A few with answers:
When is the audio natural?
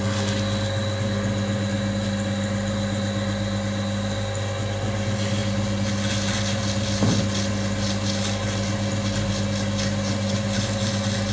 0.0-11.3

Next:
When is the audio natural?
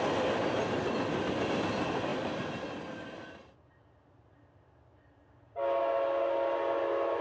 0.0-7.2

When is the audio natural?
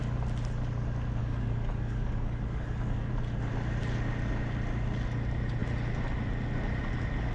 0.0-1.2; 3.1-7.3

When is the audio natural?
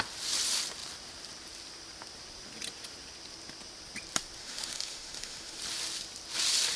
0.0-4.4; 5.6-6.8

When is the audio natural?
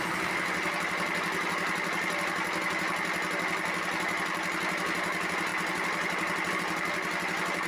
0.0-7.7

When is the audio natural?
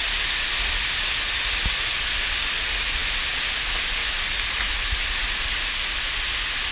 0.0-6.7